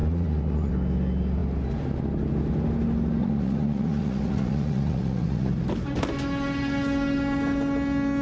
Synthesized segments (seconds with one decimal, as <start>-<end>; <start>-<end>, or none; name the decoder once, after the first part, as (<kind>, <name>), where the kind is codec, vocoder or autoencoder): 0.0-0.7 (vocoder, Vocos); 3.2-5.5